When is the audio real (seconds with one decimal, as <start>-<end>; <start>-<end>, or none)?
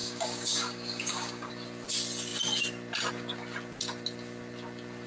1.5-5.1